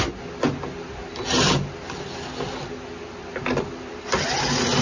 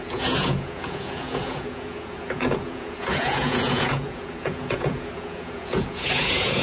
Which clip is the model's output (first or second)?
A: second